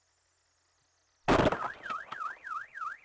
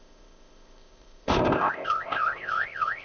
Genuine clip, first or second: first